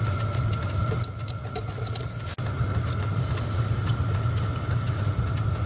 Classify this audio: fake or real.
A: real